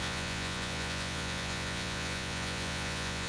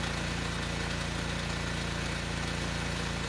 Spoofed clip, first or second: first